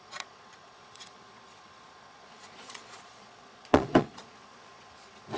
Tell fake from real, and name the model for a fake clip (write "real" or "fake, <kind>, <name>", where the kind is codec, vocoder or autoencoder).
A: fake, vocoder, Vocos